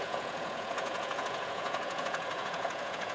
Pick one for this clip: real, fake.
fake